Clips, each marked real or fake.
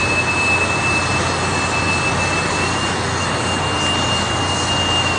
real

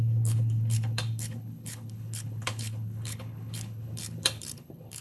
fake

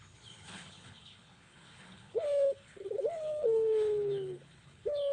fake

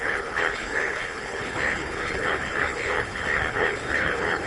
fake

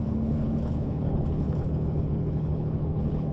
fake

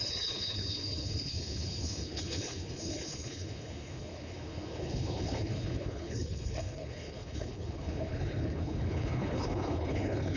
fake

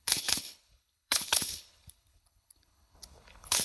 fake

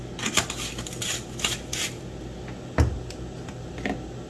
real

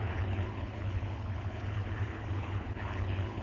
fake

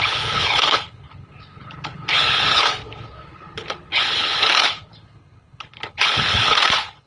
fake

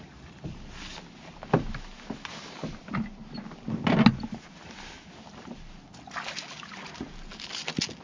real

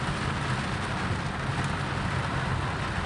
real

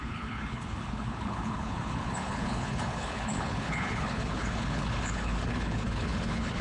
fake